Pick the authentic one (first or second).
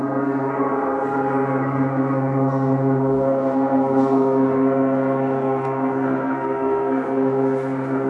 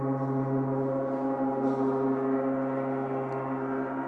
second